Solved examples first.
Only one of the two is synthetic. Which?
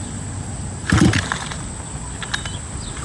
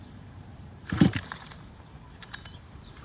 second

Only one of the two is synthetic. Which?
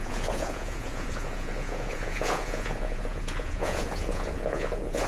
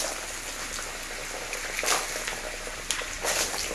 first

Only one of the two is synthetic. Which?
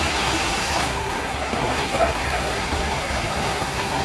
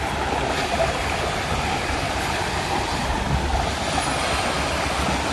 first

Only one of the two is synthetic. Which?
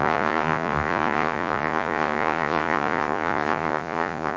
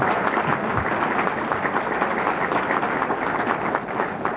first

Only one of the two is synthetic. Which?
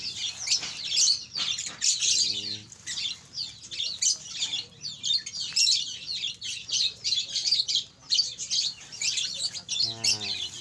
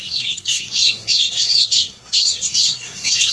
second